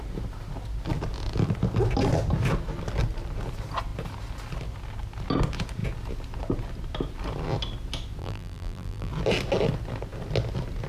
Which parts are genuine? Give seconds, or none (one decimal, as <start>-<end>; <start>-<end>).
0.0-8.2; 9.1-10.9